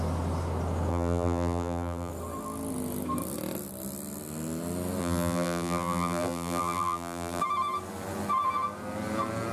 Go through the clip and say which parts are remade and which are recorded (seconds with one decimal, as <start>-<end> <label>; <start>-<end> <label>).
0.0-0.9 recorded; 0.9-2.1 remade; 2.1-5.0 recorded; 5.0-7.4 remade; 7.4-9.5 recorded